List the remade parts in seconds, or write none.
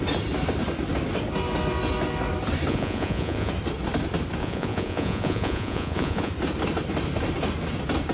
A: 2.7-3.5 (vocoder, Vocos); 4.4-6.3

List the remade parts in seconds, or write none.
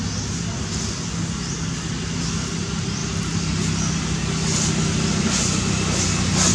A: none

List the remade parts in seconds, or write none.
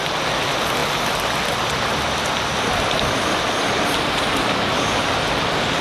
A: none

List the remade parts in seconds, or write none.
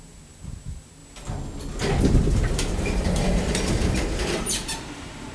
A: 0.0-1.0 (vocoder, BigVGAN v2); 2.0-5.3